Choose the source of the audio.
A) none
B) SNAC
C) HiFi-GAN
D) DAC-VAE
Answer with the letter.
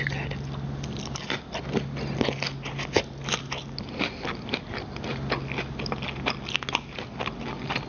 A